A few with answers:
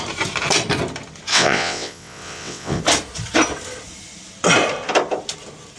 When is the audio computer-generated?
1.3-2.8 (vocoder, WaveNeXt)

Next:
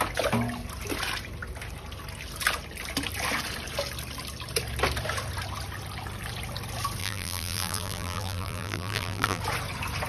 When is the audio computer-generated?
7.0-9.4 (vocoder, BigVGAN v2)

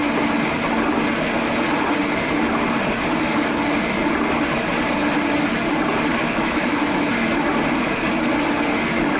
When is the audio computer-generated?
6.1-6.7 (autoencoder, DAC-VAE)